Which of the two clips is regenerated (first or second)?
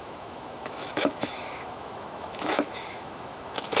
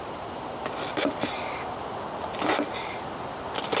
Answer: first